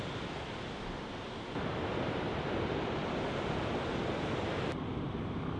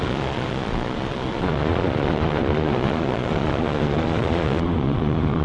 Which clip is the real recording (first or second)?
first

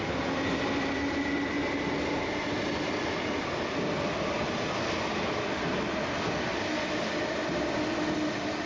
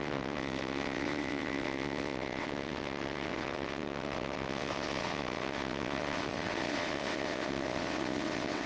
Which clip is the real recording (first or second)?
first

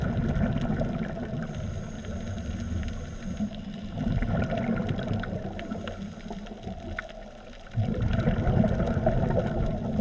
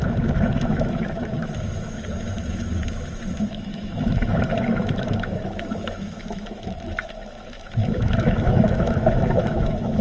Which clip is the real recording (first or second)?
first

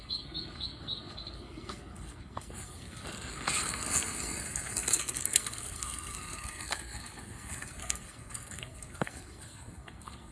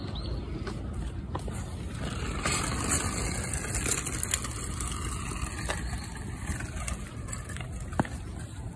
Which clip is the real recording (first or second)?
second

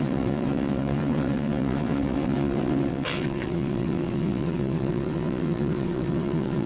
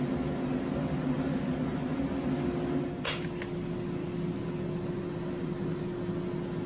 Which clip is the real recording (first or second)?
second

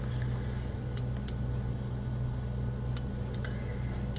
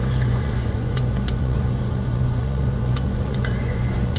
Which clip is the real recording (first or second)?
first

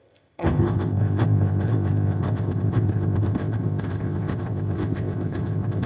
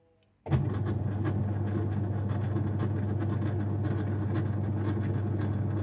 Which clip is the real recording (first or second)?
second